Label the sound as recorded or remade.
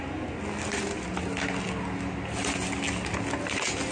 recorded